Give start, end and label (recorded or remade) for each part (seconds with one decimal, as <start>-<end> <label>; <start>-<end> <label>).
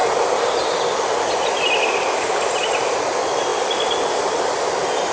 0.0-5.1 recorded